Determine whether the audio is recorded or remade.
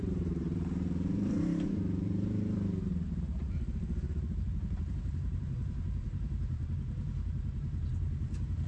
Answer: remade